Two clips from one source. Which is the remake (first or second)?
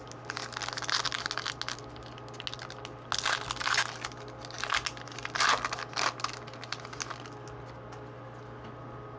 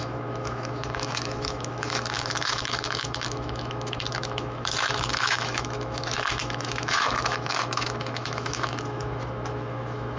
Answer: second